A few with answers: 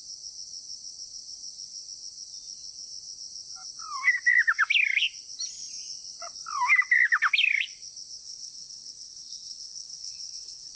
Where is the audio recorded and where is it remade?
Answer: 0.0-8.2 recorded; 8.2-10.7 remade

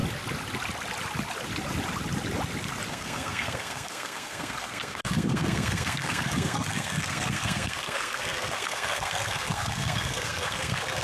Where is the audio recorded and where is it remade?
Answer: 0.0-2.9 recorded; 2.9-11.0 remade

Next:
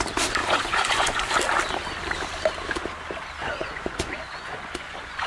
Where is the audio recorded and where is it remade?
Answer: 0.0-0.4 recorded; 0.4-1.3 remade; 1.3-3.4 recorded; 3.4-5.3 remade